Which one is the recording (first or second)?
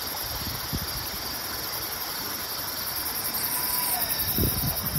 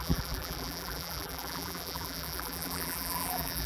first